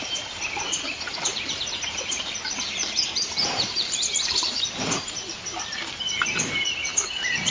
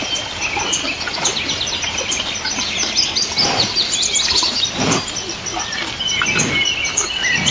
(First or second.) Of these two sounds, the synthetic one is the first